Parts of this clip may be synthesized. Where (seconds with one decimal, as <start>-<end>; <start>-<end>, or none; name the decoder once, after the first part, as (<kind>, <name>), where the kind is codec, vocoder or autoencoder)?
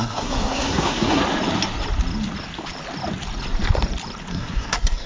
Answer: 0.0-1.2 (codec, SNAC); 4.3-5.1